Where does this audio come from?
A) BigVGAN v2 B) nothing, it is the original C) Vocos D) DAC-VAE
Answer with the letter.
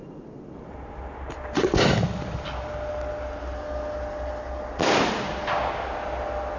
B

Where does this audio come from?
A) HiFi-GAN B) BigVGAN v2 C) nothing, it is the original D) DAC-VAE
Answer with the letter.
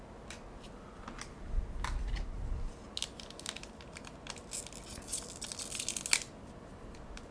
C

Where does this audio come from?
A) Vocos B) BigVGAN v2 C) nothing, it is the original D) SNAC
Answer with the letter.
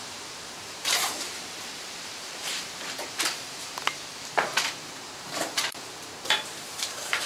B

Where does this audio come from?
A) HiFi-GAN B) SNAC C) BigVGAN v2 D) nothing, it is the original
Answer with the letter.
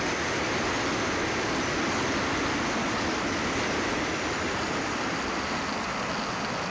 D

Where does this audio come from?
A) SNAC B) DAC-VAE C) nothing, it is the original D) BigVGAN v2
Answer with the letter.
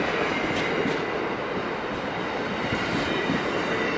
C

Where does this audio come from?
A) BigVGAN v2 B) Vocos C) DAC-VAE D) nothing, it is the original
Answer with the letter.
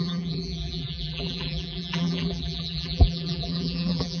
A